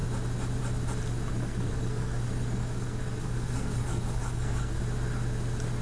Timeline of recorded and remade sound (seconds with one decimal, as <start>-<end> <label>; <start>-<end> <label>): 0.0-1.3 recorded; 1.3-4.8 remade; 4.8-5.8 recorded